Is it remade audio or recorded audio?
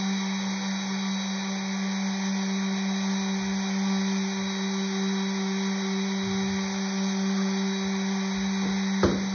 recorded